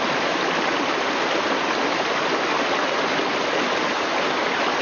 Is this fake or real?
real